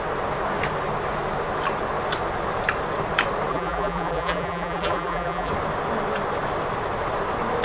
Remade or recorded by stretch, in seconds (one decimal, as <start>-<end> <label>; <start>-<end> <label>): 0.0-3.5 recorded; 3.5-5.5 remade; 5.5-7.6 recorded